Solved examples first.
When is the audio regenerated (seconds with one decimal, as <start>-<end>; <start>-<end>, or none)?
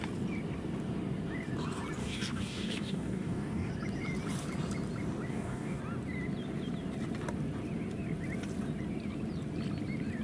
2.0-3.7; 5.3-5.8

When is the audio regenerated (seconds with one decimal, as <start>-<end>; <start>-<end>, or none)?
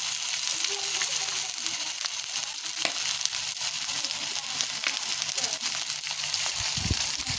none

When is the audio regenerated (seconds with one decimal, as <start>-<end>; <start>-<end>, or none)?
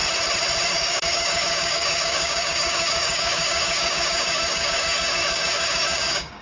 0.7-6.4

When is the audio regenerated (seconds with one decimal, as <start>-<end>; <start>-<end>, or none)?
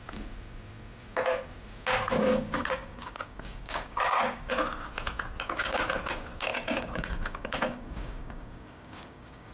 2.3-4.5; 6.5-9.5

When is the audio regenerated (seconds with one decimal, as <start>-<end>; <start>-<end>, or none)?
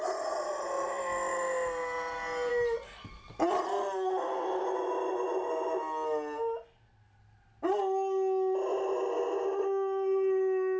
none